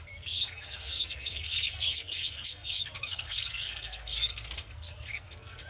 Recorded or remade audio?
remade